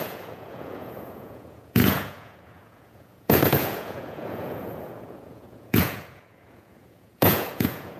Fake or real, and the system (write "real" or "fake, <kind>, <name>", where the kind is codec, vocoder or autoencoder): fake, vocoder, Vocos